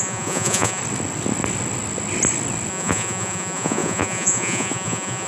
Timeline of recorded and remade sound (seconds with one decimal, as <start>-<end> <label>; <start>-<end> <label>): 0.0-0.8 remade; 0.8-2.7 recorded; 2.7-5.3 remade